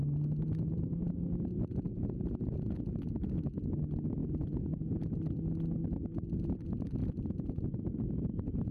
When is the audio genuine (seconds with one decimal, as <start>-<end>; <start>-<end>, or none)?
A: 0.0-1.9; 2.9-4.2; 5.1-7.0; 7.8-8.7